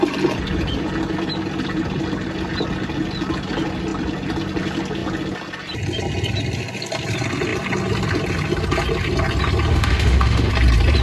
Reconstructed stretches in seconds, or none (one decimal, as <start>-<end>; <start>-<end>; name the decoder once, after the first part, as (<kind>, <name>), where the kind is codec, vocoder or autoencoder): 9.7-10.5 (autoencoder, DAC-VAE)